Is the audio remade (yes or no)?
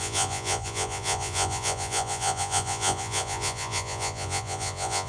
yes